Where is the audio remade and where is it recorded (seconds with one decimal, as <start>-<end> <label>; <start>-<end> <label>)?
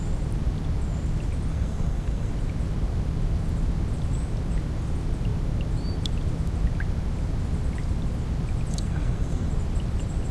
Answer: 0.0-1.5 recorded; 1.5-2.3 remade; 2.3-8.7 recorded; 8.7-9.5 remade; 9.5-10.3 recorded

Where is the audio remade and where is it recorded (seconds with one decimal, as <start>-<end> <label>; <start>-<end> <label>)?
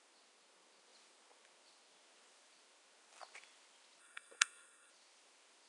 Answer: 0.0-4.0 recorded; 4.0-4.9 remade; 4.9-5.7 recorded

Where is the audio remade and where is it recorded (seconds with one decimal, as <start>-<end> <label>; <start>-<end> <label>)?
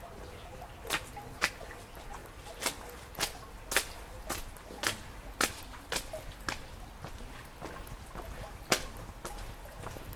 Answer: 0.0-10.2 recorded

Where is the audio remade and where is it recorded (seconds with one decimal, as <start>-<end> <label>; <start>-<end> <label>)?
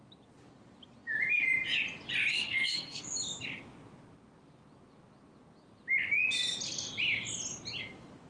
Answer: 0.0-2.3 recorded; 2.3-3.0 remade; 3.0-8.3 recorded